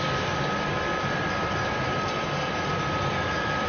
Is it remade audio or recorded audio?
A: recorded